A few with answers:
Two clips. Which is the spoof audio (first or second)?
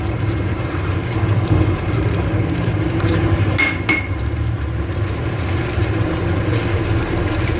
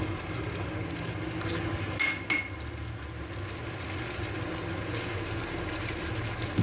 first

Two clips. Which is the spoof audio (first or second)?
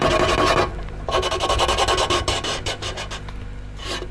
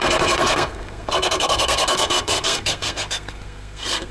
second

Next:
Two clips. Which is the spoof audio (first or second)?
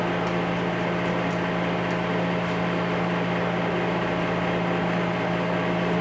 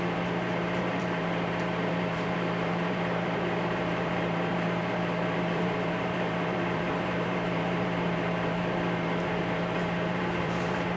second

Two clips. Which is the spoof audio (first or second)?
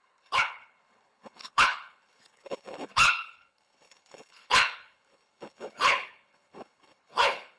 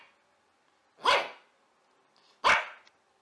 first